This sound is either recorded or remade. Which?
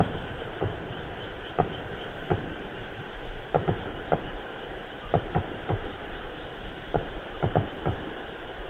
remade